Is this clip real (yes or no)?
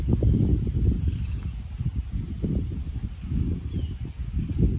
yes